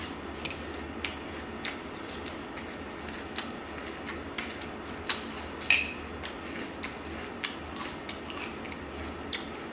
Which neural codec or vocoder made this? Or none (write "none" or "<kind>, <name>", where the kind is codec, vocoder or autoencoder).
none